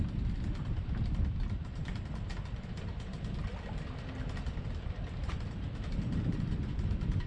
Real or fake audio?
real